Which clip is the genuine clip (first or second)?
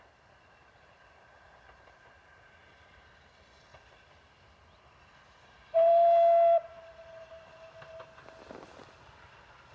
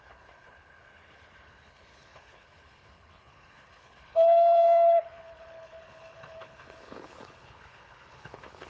first